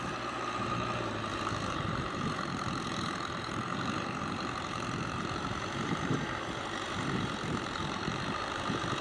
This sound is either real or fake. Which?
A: fake